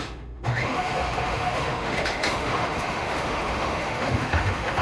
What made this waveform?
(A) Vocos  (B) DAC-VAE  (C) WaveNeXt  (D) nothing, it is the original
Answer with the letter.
B